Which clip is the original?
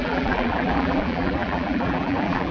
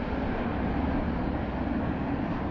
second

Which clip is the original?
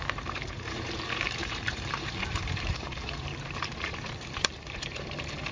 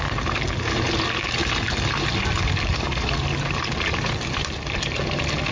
second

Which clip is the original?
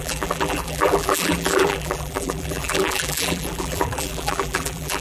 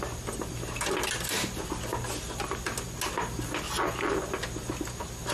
second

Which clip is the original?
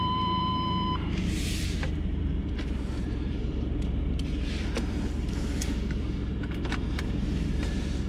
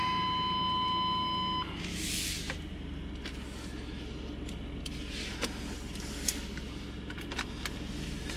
second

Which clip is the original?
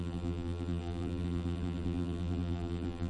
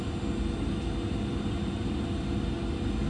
second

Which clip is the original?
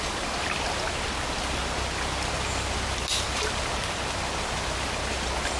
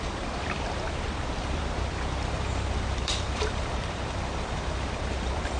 first